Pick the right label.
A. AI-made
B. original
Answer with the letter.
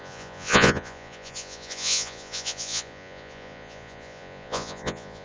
A